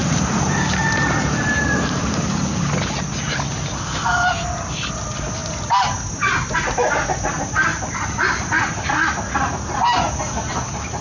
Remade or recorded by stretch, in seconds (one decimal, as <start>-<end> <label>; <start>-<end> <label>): 0.0-2.7 remade; 2.7-11.0 recorded